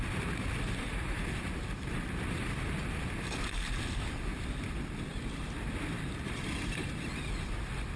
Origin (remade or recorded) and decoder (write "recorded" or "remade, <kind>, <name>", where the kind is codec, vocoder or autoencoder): remade, vocoder, BigVGAN v2